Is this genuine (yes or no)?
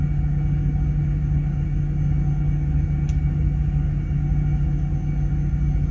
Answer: yes